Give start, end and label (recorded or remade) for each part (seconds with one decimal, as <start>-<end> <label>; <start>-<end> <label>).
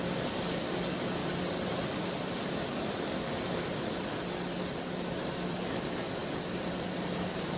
0.0-7.6 recorded